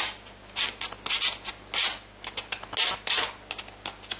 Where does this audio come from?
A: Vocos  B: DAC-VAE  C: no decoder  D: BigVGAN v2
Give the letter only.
C